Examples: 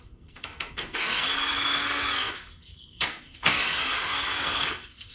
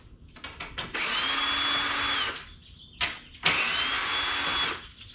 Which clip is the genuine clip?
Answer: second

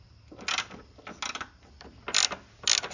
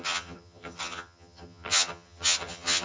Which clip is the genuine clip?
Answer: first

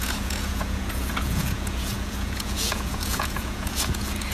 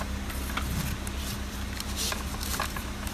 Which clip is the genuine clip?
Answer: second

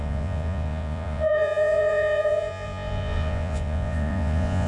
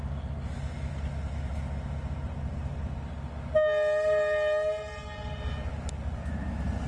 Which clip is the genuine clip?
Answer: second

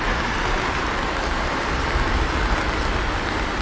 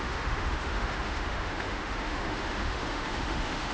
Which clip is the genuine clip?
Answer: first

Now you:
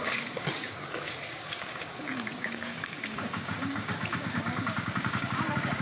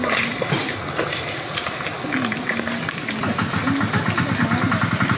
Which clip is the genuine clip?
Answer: second